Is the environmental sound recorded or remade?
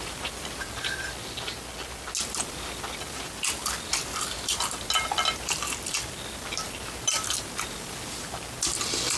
recorded